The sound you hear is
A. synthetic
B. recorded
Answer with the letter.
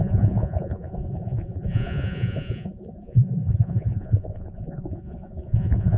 A